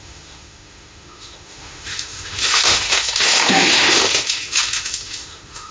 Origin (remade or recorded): remade